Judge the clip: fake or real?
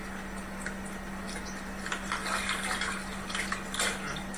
real